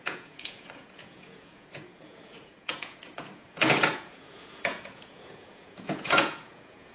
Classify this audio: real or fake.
fake